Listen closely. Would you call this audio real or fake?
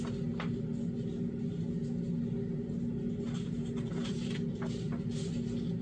real